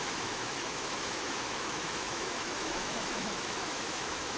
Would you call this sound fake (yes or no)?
yes